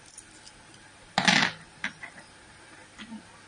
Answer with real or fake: real